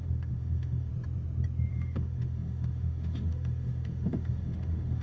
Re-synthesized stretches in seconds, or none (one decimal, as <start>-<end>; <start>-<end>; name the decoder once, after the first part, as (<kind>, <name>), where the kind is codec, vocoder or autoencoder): 0.0-0.9 (autoencoder, DAC-VAE); 1.7-5.0